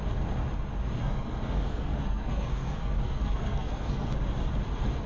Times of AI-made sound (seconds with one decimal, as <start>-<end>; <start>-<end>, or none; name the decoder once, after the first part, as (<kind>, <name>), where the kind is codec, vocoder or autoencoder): 1.0-4.1 (codec, SNAC)

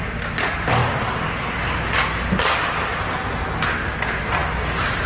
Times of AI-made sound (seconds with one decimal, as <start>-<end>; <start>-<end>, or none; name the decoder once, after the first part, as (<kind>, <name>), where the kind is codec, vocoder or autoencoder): none

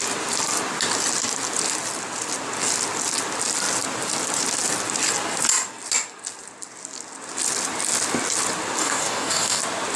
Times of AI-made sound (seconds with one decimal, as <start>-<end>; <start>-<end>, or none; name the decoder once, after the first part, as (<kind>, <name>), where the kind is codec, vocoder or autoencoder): 8.8-9.6 (codec, DAC)

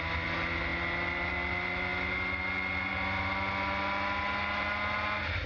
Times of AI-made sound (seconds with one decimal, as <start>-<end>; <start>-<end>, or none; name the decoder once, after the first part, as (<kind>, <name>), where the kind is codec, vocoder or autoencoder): none

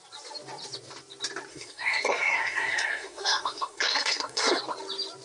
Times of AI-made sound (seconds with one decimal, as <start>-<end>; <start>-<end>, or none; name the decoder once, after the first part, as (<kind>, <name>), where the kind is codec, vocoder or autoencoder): 1.5-4.6 (codec, SNAC)

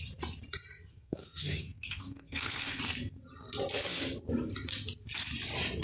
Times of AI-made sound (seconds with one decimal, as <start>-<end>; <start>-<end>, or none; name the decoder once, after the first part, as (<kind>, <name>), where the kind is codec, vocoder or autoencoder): 0.9-2.8 (codec, SNAC)

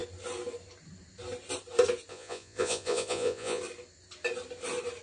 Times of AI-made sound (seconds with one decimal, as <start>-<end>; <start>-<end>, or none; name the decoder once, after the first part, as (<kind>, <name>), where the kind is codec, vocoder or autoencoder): 2.1-3.6 (vocoder, Vocos)

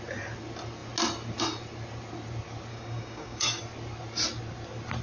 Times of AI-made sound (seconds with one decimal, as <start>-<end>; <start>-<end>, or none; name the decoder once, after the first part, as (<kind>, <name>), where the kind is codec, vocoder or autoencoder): 2.7-3.6 (codec, DAC)